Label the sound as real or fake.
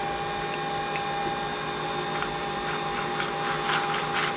real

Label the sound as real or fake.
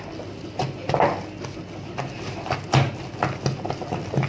real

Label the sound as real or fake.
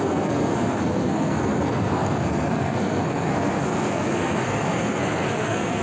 fake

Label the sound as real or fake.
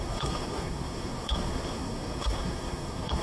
fake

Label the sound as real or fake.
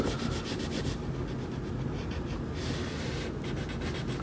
real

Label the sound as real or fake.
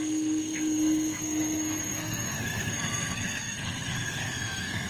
fake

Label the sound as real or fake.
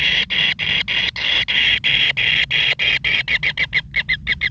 real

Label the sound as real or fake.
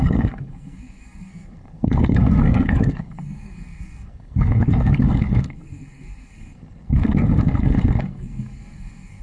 fake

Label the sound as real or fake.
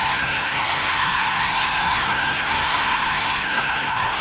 fake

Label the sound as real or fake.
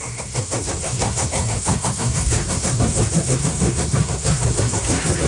fake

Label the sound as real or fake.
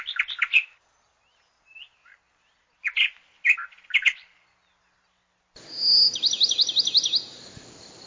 real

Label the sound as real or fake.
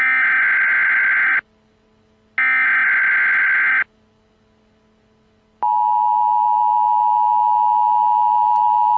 real